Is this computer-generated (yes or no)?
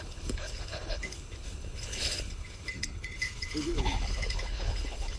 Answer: yes